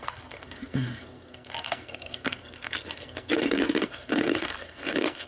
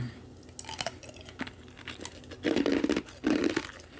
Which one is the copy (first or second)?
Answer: first